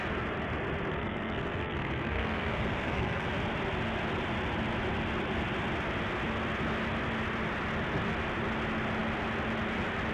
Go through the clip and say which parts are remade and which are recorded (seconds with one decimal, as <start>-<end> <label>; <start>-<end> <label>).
0.0-0.9 recorded; 0.9-3.3 remade; 3.3-10.1 recorded